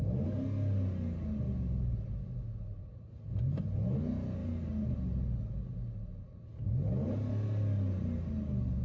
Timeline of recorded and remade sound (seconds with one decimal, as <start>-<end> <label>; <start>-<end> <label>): 0.0-8.8 recorded